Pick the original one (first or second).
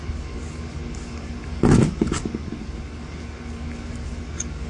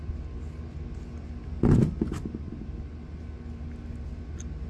second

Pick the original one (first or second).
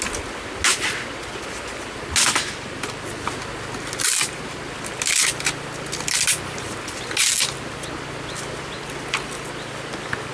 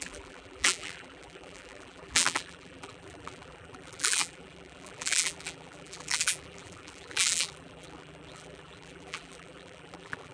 first